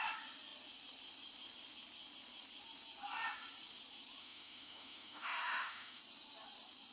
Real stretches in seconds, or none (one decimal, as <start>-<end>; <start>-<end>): 0.0-4.2; 6.0-6.9